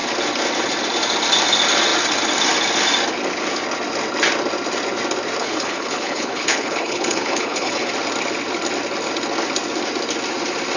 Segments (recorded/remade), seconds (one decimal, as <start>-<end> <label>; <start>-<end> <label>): 0.0-5.4 recorded; 5.4-7.9 remade; 7.9-10.8 recorded